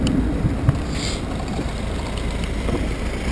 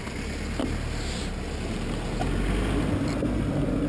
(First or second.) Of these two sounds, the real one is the second